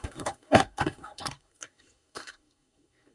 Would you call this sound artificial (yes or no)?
yes